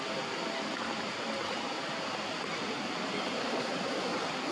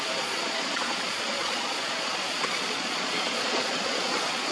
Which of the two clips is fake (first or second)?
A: second